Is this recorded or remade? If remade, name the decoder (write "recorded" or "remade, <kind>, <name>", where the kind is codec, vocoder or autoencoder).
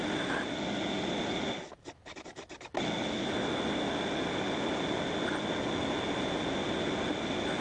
recorded